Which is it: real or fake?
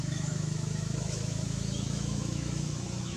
fake